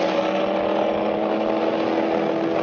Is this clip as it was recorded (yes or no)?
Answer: yes